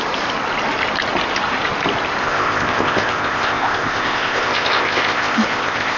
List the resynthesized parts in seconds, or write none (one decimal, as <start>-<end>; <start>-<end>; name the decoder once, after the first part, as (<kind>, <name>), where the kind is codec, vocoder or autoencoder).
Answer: 2.2-6.0 (codec, ZipCodec)